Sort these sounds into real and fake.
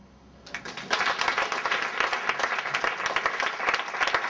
real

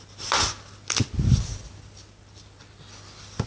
real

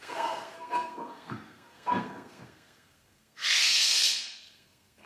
fake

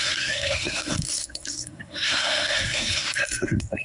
fake